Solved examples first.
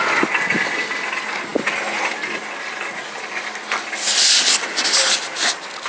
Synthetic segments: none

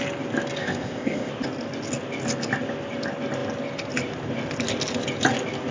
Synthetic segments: 0.6-1.3 (codec, ZipCodec)

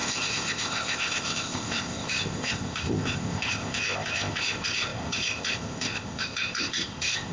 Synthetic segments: 0.0-7.3 (codec, ZipCodec)

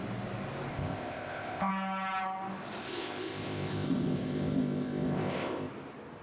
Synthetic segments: 0.7-1.7 (codec, ZipCodec); 2.8-5.7